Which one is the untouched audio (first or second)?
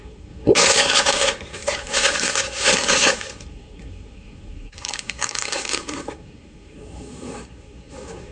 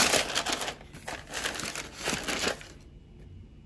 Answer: second